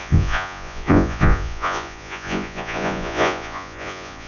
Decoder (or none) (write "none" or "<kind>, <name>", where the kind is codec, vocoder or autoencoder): vocoder, Vocos